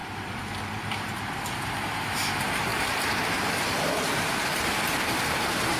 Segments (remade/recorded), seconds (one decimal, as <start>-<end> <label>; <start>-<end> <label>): 0.0-1.6 recorded; 1.6-5.8 remade